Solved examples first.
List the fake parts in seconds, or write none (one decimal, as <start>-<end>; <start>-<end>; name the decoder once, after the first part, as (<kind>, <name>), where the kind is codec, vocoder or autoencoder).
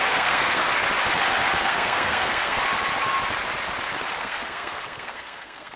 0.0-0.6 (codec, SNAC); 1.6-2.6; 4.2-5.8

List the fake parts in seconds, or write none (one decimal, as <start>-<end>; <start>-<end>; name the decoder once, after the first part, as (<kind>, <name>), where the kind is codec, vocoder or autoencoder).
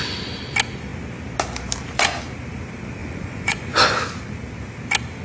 3.0-3.8 (vocoder, Vocos)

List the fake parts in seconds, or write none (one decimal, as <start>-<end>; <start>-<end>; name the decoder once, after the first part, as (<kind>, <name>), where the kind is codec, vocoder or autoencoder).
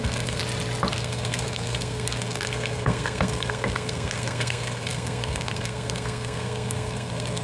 0.0-0.4 (codec, SNAC); 0.9-7.4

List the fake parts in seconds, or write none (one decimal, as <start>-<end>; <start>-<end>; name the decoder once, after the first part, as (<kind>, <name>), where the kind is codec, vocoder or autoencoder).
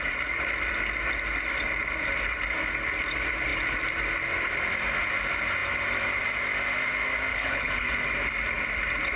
7.3-7.9 (codec, HILCodec)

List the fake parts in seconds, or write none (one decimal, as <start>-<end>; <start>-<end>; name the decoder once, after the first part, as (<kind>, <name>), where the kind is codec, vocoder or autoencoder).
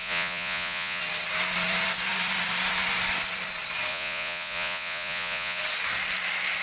0.0-1.0 (vocoder, Vocos); 3.9-5.6